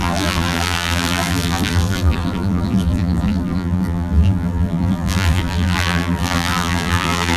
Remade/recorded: remade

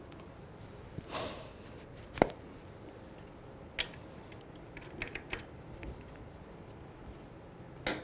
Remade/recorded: recorded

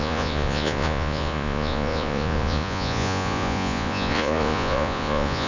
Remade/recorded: remade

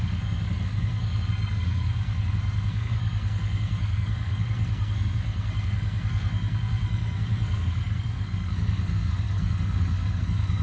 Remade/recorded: remade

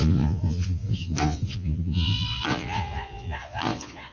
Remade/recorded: remade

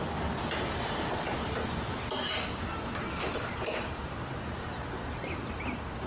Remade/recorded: recorded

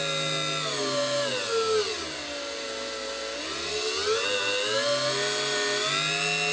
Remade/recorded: recorded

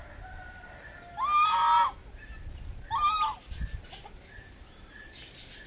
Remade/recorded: recorded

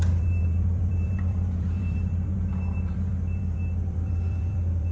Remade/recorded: remade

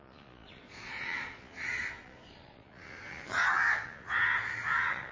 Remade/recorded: remade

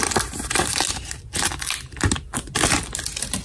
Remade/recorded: recorded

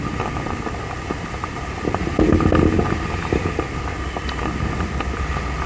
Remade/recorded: recorded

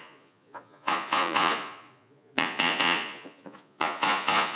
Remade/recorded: remade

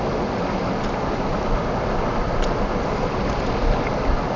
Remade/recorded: recorded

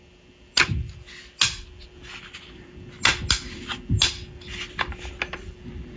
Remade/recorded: recorded